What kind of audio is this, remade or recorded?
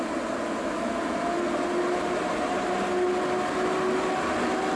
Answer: recorded